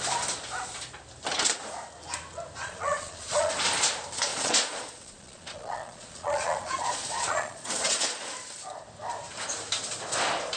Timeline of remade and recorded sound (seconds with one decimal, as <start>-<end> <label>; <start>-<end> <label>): 0.0-2.6 recorded; 2.6-3.5 remade; 3.5-4.3 recorded; 4.3-8.2 remade; 8.2-10.6 recorded